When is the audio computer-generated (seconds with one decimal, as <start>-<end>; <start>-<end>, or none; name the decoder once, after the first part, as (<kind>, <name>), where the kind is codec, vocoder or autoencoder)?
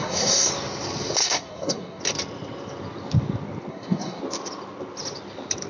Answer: 0.0-0.5 (codec, SNAC); 1.2-2.0; 3.7-4.2